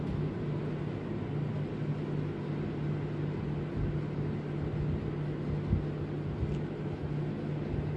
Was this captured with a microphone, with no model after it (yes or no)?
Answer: yes